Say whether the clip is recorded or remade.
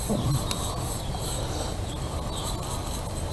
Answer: recorded